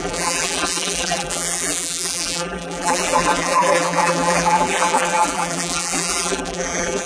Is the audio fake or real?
fake